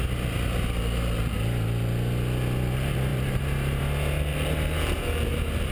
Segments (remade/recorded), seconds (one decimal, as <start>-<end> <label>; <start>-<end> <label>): 0.0-3.1 recorded; 3.1-3.8 remade; 3.8-4.3 recorded; 4.3-5.0 remade; 5.0-5.7 recorded